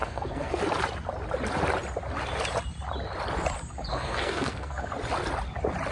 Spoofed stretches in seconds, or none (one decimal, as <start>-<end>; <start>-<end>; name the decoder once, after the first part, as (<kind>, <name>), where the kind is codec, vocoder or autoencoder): 0.0-0.6 (codec, SNAC); 3.9-4.9